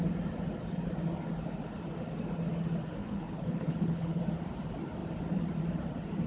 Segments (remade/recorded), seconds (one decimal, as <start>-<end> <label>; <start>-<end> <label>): 0.0-3.0 recorded; 3.0-4.2 remade; 4.2-6.3 recorded

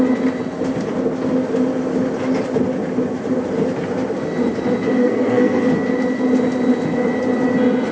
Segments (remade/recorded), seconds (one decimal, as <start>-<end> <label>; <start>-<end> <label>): 0.0-5.0 recorded; 5.0-5.6 remade; 5.6-7.9 recorded

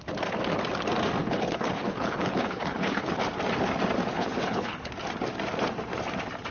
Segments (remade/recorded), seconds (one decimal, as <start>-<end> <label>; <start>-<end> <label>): 0.0-1.2 recorded; 1.2-3.2 remade; 3.2-4.1 recorded; 4.1-4.9 remade; 4.9-6.5 recorded

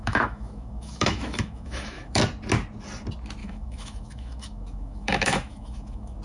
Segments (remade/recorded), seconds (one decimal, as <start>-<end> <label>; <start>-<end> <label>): 0.0-2.2 remade; 2.2-3.4 recorded; 3.4-6.2 remade

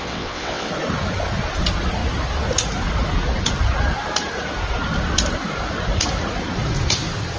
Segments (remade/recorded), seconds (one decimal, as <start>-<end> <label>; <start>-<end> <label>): 0.0-0.7 remade; 0.7-7.4 recorded